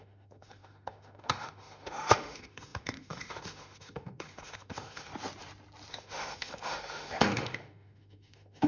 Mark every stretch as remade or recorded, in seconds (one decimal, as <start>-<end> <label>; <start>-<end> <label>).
0.0-5.1 remade; 5.1-5.9 recorded; 5.9-8.7 remade